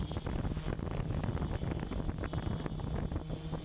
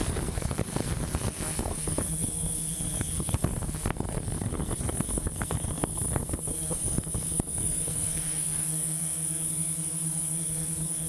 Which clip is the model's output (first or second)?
second